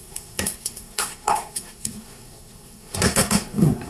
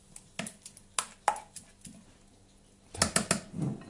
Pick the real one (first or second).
second